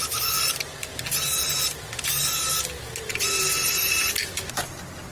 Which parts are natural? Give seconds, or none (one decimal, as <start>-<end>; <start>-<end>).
0.0-5.1